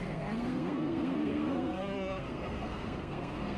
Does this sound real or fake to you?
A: fake